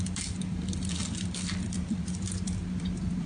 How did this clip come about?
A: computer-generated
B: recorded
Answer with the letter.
A